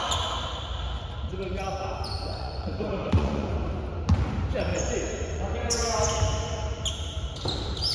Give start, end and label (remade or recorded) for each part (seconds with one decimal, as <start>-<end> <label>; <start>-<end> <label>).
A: 0.0-1.3 recorded; 1.3-3.5 remade; 3.5-4.7 recorded; 4.7-5.4 remade; 5.4-7.9 recorded